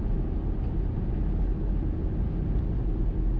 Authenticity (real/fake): real